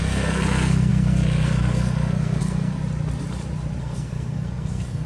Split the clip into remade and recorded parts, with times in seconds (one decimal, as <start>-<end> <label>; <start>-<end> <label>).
0.0-2.8 remade; 2.8-3.8 recorded; 3.8-5.1 remade